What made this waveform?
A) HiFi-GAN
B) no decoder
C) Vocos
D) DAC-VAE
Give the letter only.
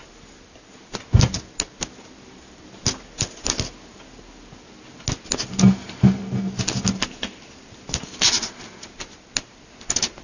B